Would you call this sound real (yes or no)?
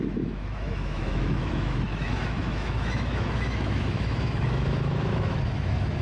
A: no